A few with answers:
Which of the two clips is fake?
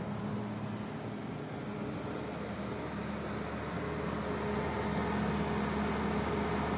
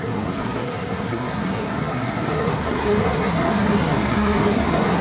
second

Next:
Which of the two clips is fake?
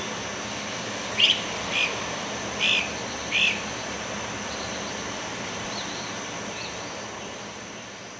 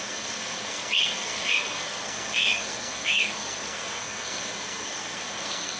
second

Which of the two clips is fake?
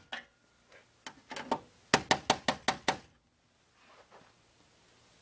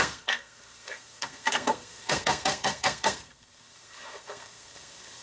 second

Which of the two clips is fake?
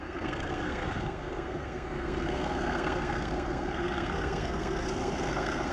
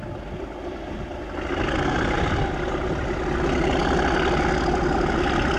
first